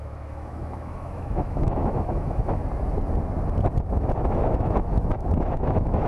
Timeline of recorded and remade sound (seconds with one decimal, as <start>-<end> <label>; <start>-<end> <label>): 0.0-2.6 remade; 2.6-3.8 recorded; 3.8-6.1 remade